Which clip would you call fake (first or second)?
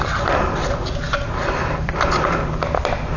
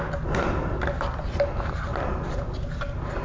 first